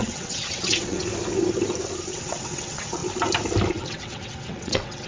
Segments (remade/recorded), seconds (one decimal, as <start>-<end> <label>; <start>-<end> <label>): 0.0-1.1 remade; 1.1-2.1 recorded; 2.1-3.0 remade; 3.0-3.7 recorded; 3.7-5.1 remade